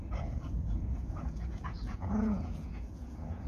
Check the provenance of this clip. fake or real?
fake